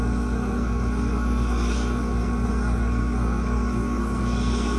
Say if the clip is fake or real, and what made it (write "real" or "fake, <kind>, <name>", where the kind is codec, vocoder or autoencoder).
fake, codec, SNAC